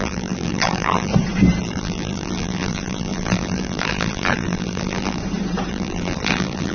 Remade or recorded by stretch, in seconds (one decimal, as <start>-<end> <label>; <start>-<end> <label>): 0.0-1.1 remade; 1.1-1.6 recorded; 1.6-5.2 remade; 5.2-5.7 recorded; 5.7-6.7 remade